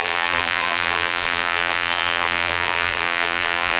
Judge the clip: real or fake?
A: fake